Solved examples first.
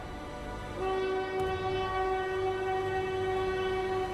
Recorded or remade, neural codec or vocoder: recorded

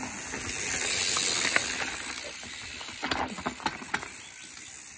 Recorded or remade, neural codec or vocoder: recorded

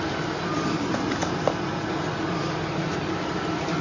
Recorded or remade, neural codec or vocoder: recorded